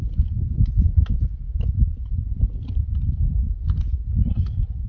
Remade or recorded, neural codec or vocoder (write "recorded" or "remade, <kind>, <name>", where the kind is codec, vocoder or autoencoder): recorded